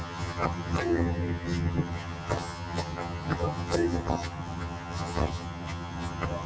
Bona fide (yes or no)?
no